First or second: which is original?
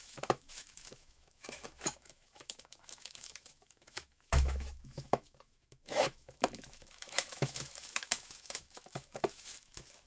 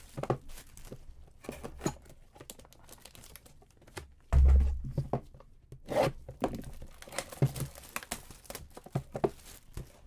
second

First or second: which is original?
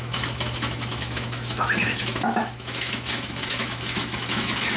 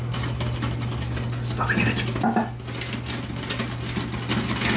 second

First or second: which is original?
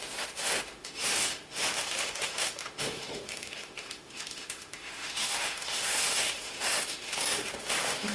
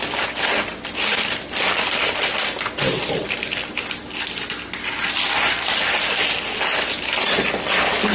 second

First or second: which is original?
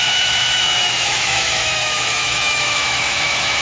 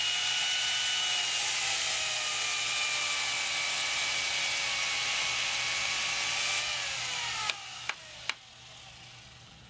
second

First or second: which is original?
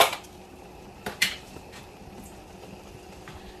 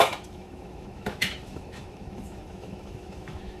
first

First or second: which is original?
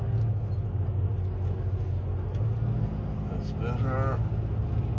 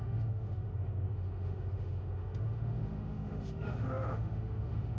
first